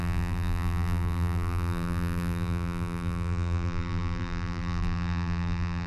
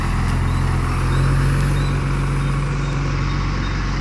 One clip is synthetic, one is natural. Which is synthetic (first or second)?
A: first